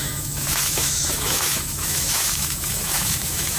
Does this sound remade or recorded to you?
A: remade